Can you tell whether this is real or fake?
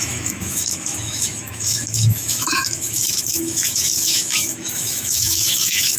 fake